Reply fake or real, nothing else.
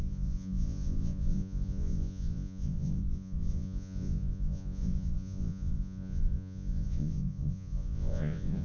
fake